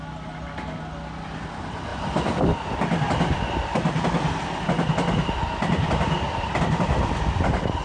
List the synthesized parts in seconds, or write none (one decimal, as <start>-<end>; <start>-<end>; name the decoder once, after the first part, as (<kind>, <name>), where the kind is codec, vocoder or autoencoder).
none